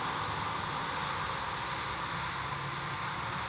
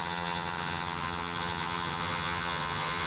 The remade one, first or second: second